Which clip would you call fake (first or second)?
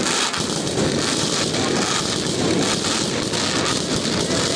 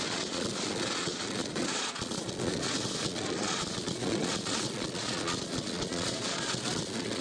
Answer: second